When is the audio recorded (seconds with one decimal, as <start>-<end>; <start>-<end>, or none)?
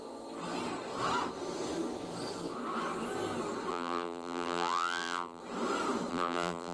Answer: 0.0-3.7; 5.4-6.1